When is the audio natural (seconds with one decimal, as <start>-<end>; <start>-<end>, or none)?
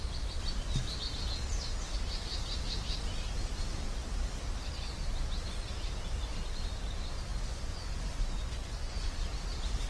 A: 0.0-7.3; 9.1-9.9